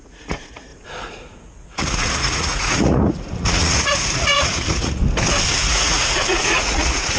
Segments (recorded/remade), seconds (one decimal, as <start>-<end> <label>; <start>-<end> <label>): 0.0-5.0 remade; 5.0-5.6 recorded; 5.6-7.2 remade